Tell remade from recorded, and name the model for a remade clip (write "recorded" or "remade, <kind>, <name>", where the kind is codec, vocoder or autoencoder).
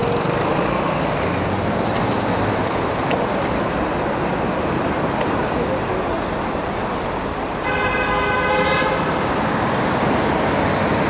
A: recorded